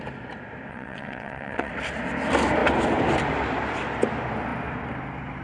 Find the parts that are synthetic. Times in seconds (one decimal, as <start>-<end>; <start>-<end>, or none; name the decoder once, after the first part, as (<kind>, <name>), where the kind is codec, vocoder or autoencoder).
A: 0.7-1.7 (vocoder, WaveNeXt)